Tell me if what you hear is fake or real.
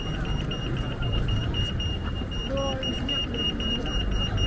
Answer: fake